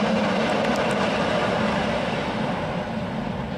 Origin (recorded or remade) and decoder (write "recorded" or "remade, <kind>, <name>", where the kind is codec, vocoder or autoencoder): recorded